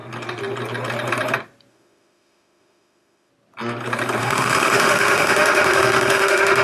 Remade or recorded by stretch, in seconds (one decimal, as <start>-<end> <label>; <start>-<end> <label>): 0.0-1.7 recorded; 1.7-3.3 remade; 3.3-4.2 recorded; 4.2-6.6 remade